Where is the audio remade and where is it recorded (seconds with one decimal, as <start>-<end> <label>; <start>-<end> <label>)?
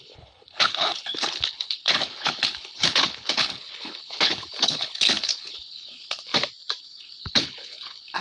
0.0-6.3 remade; 6.3-6.8 recorded; 6.8-8.2 remade